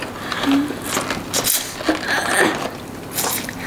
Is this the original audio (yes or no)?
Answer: yes